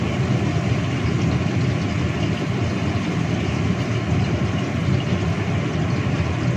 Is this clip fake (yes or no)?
no